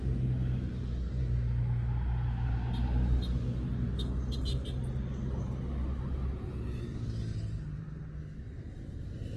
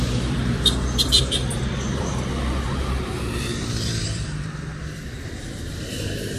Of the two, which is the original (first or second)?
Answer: first